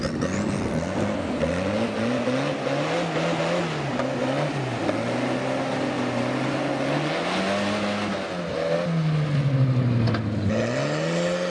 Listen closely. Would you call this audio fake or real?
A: real